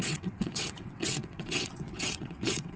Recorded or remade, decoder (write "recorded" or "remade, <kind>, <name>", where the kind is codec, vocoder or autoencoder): remade, vocoder, WaveNeXt